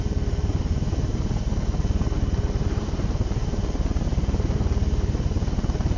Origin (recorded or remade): remade